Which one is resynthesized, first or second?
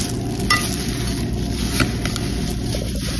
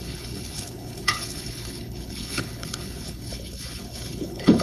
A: second